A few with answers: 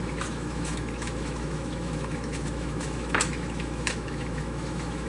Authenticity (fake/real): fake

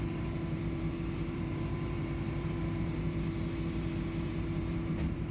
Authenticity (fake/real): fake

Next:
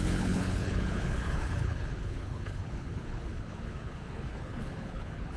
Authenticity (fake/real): fake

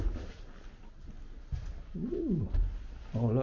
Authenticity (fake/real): real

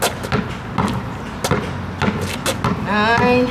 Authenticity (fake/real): real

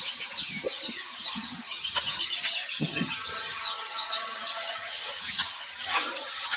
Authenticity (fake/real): fake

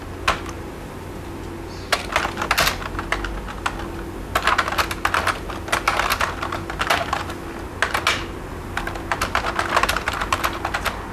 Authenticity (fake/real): real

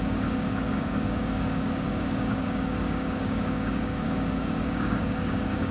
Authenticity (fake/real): fake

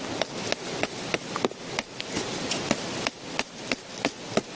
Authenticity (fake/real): real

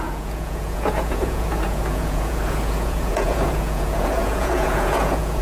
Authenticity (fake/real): fake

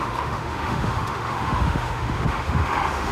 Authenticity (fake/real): fake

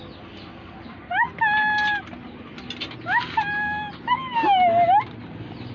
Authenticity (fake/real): real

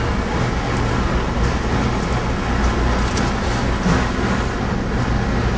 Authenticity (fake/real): real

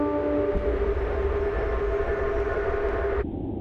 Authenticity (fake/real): real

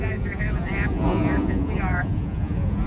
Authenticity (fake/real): fake